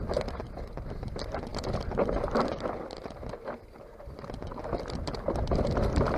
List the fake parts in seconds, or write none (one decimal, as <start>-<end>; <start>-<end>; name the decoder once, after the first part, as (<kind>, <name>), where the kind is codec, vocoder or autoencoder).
none